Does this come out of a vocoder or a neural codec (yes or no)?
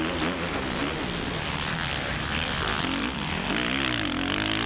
no